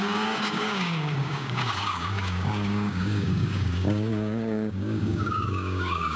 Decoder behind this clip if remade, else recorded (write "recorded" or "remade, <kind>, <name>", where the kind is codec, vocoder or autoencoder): remade, codec, DAC